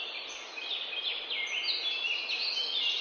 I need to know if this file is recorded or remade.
recorded